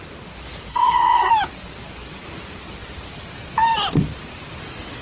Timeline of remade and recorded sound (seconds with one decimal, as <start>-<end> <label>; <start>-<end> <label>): 0.0-0.7 recorded; 0.7-1.3 remade; 1.3-5.0 recorded